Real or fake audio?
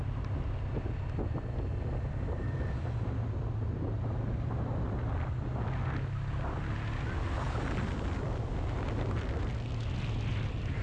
real